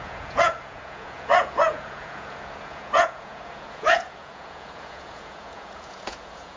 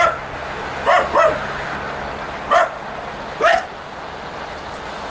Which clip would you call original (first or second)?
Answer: second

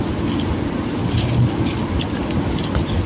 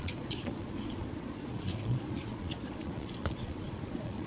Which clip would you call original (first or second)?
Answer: first